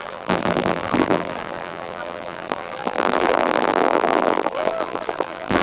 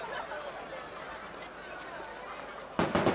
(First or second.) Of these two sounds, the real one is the second